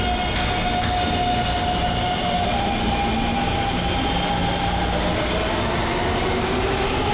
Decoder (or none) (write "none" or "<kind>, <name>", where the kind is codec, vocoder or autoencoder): none